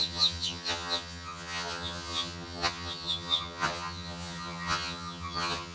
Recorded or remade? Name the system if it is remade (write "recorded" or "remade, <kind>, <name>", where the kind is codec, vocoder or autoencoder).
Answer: remade, vocoder, HiFi-GAN